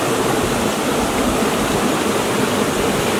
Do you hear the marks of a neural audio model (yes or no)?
no